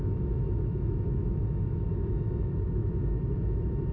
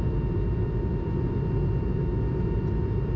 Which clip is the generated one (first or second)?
first